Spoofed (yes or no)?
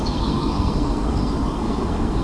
yes